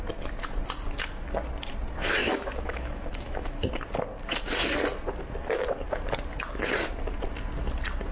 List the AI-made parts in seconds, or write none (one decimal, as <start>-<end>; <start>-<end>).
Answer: 2.2-3.7